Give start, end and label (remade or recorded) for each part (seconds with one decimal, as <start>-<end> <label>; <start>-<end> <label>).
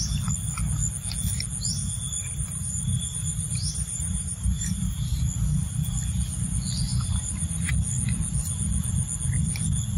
0.0-2.2 recorded; 2.2-5.2 remade; 5.2-6.9 recorded; 6.9-7.7 remade; 7.7-10.0 recorded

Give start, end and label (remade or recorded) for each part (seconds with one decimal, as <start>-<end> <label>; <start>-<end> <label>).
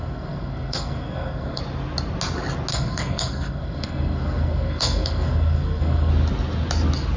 0.0-1.6 remade; 1.6-2.7 recorded; 2.7-6.1 remade; 6.1-7.2 recorded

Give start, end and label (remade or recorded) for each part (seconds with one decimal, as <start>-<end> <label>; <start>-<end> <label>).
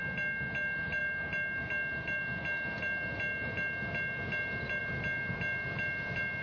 0.0-6.4 recorded